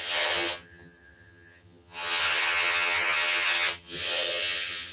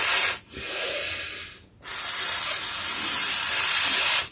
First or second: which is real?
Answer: second